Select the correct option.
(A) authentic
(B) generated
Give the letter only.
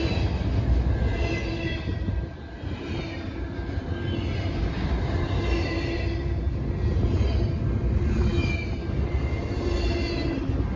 A